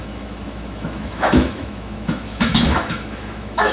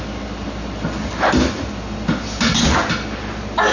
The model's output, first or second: first